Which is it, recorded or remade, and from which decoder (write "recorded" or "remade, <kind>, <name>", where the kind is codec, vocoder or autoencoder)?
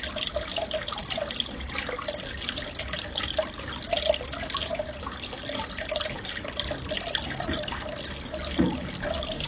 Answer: recorded